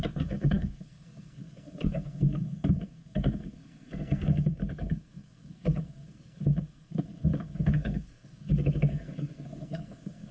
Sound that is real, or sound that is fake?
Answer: fake